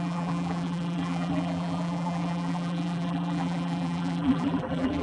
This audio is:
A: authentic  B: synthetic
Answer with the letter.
B